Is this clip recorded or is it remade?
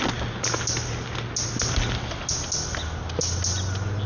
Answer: recorded